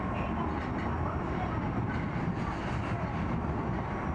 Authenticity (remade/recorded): recorded